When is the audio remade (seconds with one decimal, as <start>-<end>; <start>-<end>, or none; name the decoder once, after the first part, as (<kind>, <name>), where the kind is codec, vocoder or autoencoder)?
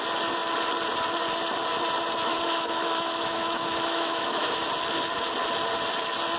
2.3-4.5 (autoencoder, DAC-VAE)